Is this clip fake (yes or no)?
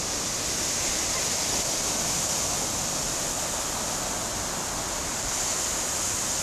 no